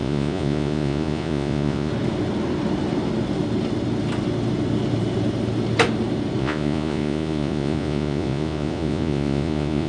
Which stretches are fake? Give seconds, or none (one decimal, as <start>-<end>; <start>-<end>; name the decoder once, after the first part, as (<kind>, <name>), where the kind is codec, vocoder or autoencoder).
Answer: 0.0-1.9 (vocoder, Vocos); 6.4-9.9